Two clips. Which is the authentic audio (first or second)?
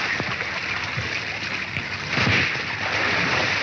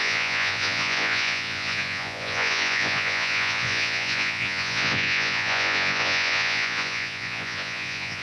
first